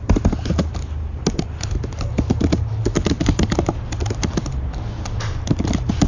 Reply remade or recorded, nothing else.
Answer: recorded